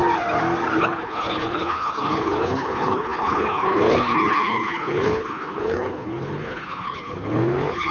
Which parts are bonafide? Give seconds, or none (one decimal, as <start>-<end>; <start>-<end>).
0.0-0.8